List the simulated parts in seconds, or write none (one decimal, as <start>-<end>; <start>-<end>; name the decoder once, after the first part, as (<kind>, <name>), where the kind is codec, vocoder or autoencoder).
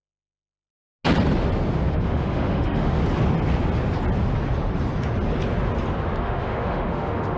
0.0-0.7 (autoencoder, DAC-VAE); 1.9-3.0; 6.2-7.4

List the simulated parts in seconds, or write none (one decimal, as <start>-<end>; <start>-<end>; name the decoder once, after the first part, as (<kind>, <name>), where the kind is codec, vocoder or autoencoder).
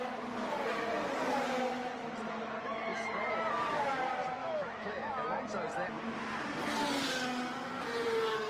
4.4-5.1 (autoencoder, DAC-VAE)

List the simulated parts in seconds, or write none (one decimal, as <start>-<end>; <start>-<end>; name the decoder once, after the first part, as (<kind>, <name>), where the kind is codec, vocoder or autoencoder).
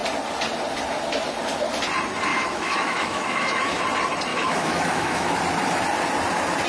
2.3-3.8 (autoencoder, DAC-VAE); 4.3-5.4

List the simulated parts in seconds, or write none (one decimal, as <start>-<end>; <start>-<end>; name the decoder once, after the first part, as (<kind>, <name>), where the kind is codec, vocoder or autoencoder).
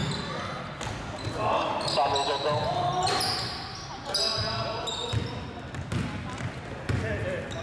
none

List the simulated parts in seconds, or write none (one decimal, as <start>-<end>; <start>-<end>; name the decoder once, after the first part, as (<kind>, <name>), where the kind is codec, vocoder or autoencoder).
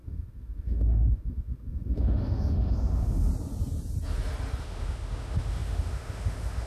0.0-3.3 (autoencoder, DAC-VAE); 4.6-6.7